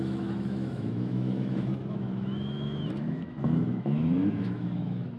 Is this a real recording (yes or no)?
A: no